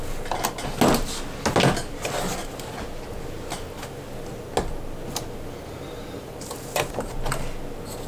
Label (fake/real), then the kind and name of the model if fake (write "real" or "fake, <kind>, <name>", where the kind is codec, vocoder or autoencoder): real